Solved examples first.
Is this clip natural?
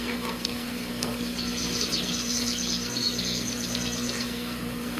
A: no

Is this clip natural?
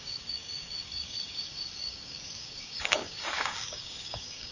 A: no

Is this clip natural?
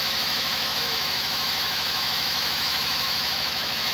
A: no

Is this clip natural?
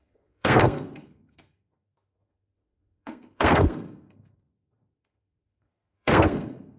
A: no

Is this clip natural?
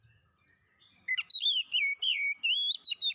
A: yes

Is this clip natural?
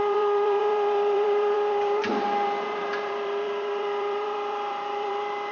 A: no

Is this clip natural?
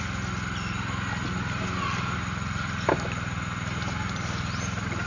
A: yes